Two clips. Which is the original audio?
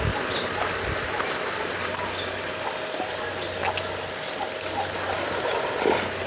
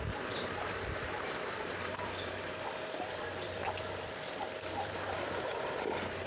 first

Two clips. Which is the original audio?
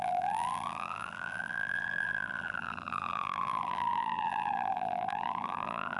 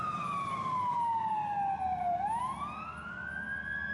second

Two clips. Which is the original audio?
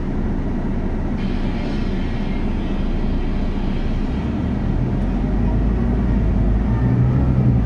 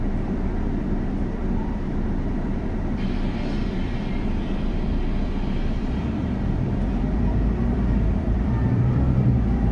first